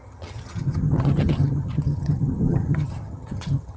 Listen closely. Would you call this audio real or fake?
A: fake